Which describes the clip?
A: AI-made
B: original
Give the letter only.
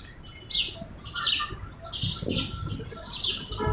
B